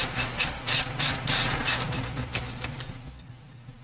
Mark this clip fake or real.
real